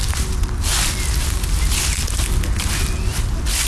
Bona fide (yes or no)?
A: yes